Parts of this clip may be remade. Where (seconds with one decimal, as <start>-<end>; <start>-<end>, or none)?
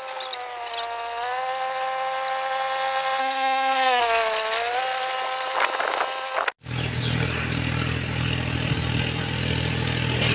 3.2-4.0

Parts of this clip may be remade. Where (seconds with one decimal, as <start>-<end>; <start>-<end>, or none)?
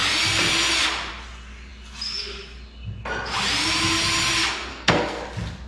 4.7-5.2